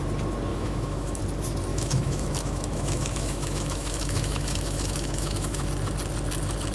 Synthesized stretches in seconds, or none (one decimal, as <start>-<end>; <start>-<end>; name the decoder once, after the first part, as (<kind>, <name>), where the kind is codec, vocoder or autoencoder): 0.5-1.2 (autoencoder, DAC-VAE); 1.7-5.7